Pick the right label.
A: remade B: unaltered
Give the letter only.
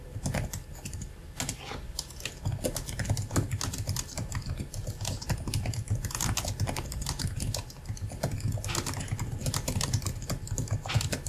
B